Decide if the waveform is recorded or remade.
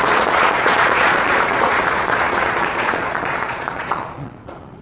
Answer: remade